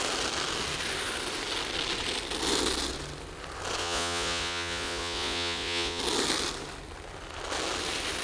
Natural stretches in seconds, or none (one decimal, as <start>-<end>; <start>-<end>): 0.0-3.8; 6.0-8.2